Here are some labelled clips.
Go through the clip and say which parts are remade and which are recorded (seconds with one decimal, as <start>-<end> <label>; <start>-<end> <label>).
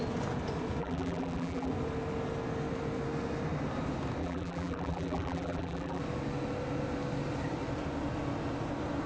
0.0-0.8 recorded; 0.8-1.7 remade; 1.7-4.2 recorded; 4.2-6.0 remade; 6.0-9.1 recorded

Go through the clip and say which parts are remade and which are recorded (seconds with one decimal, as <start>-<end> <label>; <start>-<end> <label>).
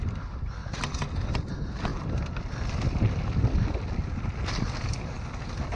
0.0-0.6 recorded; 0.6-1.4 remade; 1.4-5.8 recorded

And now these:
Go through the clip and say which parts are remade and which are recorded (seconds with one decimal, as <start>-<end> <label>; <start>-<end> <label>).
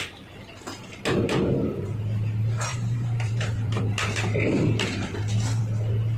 0.0-2.7 recorded; 2.7-3.8 remade; 3.8-6.2 recorded